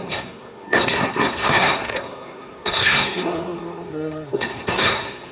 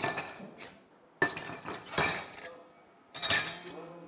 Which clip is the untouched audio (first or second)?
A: second